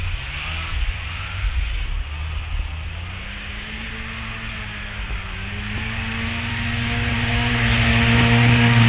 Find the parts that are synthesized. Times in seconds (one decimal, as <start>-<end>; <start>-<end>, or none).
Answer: 0.7-1.8